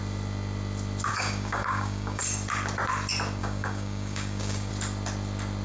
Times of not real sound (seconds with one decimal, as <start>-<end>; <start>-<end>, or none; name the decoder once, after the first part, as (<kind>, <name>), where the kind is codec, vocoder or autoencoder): 1.1-2.2 (codec, DAC); 3.4-4.7